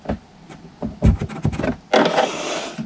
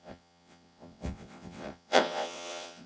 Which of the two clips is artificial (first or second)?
second